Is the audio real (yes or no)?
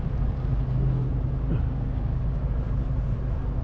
yes